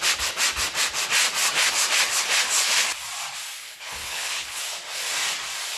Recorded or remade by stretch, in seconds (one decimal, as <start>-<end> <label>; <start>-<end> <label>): 0.0-3.6 recorded; 3.6-4.6 remade; 4.6-5.8 recorded